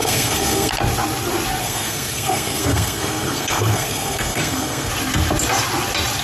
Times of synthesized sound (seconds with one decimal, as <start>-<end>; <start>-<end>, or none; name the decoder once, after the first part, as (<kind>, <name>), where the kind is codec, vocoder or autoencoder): 0.0-0.7 (codec, SNAC); 1.6-4.9